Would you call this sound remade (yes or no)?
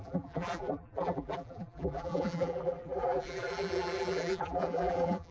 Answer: yes